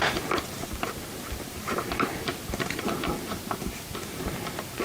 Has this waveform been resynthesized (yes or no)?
yes